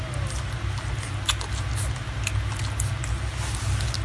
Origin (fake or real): real